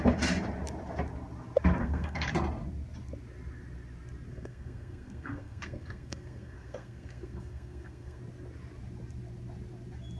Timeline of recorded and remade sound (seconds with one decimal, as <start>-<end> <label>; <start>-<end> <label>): 0.0-1.8 recorded; 1.8-2.3 remade; 2.3-4.3 recorded; 4.3-8.2 remade; 8.2-10.2 recorded